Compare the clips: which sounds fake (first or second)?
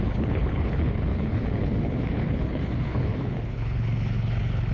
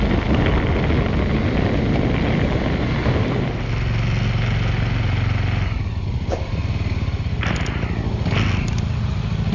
first